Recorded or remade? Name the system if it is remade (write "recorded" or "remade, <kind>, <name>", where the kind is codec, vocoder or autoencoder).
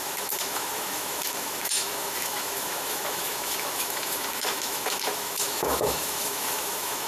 remade, autoencoder, DAC-VAE